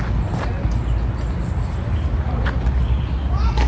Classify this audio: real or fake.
real